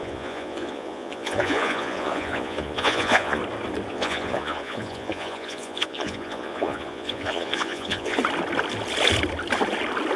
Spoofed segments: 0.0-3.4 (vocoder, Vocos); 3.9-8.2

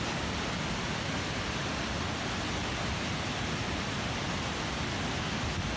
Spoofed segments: none

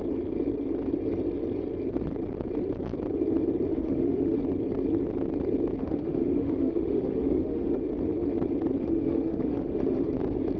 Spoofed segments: 3.7-4.4 (autoencoder, DAC-VAE); 5.8-7.8; 8.8-10.1

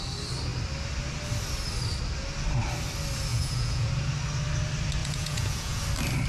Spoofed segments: 3.3-3.9 (vocoder, Vocos); 5.0-5.8

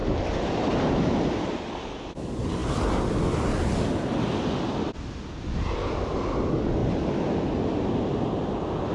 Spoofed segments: none

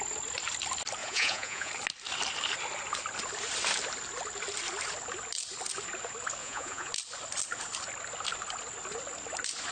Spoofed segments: 1.0-1.7 (vocoder, Vocos); 6.4-6.9